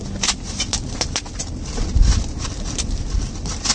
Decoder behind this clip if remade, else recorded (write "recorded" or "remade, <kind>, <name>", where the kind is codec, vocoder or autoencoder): recorded